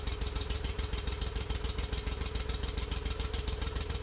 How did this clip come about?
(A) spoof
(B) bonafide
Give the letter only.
A